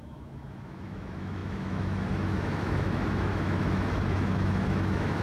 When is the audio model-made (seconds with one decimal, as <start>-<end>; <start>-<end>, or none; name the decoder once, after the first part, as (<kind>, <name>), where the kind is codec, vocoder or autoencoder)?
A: 0.0-5.2 (autoencoder, DAC-VAE)